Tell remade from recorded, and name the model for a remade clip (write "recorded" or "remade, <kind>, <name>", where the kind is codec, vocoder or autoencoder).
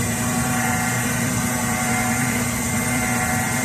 remade, vocoder, BigVGAN v2